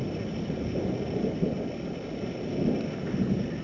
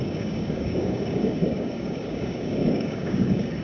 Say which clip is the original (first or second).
first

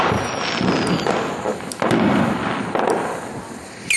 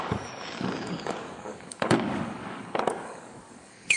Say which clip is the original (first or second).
first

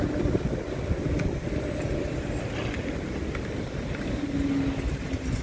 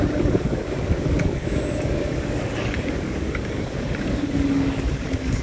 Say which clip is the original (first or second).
first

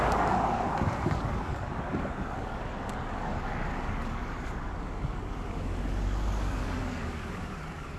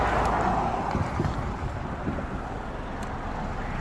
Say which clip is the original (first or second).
second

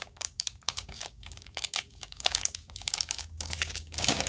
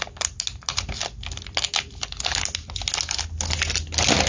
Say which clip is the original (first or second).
second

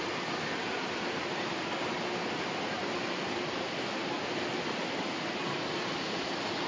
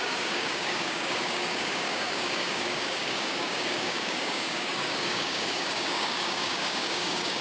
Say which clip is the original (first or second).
first